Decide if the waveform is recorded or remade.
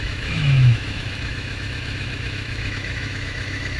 remade